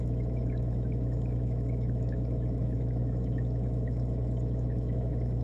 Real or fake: fake